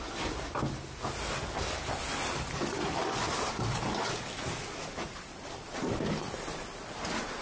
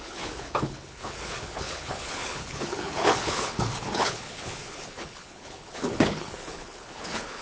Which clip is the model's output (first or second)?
second